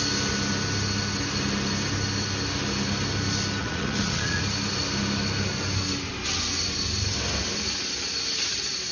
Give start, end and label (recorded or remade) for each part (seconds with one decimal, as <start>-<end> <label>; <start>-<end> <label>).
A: 0.0-3.6 recorded; 3.6-4.4 remade; 4.4-8.9 recorded